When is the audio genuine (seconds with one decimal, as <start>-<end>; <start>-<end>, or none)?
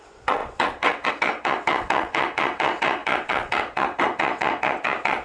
none